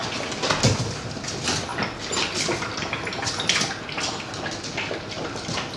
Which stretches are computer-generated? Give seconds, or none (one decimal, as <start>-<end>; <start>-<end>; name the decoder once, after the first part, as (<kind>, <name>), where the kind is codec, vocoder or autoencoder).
none